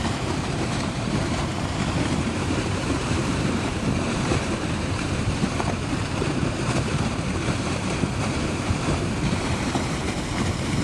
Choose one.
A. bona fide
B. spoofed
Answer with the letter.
B